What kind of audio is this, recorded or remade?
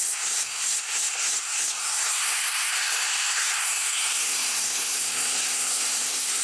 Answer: remade